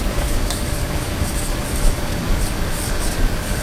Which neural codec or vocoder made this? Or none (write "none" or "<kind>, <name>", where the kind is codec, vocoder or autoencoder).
codec, DAC